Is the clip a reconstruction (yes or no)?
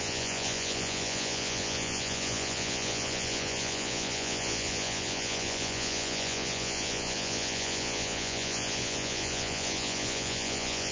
yes